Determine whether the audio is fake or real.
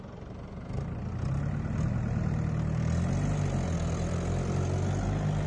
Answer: real